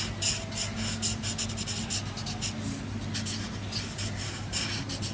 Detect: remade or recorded recorded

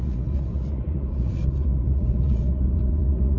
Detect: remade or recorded remade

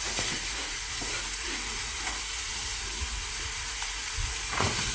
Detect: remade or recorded remade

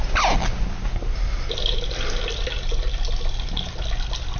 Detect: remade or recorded recorded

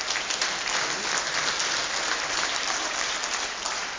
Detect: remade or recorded remade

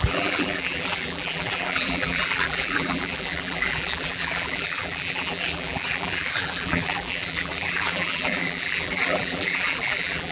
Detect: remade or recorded remade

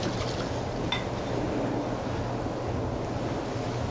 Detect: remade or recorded recorded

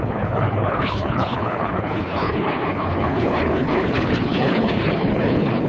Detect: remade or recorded remade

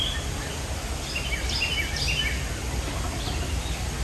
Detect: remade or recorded recorded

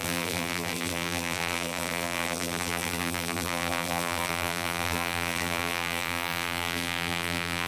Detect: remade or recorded remade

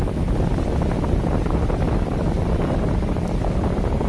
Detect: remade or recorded recorded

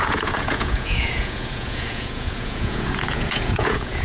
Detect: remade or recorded remade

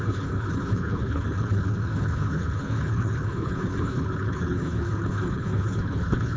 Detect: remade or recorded remade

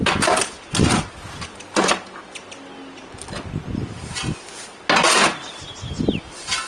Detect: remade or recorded recorded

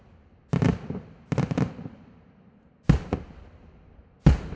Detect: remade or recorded recorded